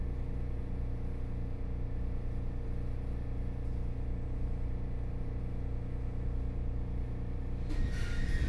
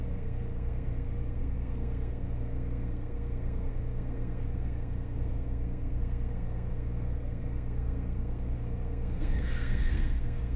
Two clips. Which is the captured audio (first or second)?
first